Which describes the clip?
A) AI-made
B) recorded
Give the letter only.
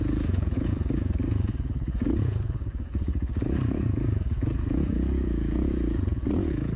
A